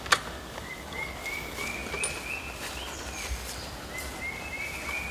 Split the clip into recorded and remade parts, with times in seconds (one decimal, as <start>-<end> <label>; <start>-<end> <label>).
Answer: 0.0-1.8 remade; 1.8-5.1 recorded